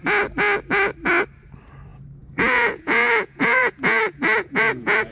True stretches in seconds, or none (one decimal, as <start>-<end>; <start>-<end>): 0.0-1.9